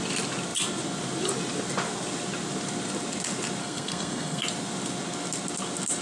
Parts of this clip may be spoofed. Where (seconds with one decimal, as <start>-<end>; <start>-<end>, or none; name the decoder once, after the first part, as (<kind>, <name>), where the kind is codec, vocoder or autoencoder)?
3.6-4.4 (codec, SNAC)